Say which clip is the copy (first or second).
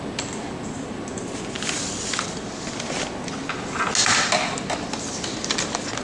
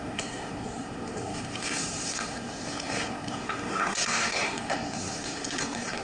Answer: second